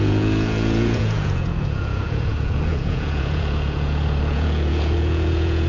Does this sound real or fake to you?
fake